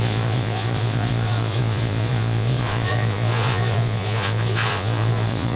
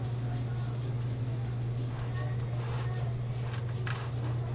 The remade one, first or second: first